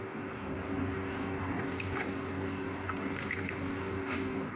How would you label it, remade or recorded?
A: remade